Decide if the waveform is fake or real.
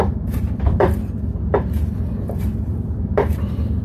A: fake